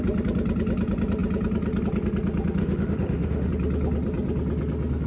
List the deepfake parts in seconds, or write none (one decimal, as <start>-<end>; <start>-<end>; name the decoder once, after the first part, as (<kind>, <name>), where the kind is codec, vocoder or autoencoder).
2.6-3.5 (autoencoder, DAC-VAE)